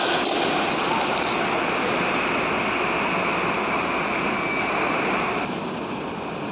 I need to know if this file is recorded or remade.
recorded